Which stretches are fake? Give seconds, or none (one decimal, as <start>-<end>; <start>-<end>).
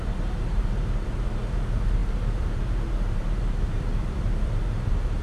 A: 0.0-5.2